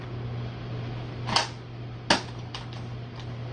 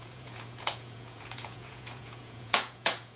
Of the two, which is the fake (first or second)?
second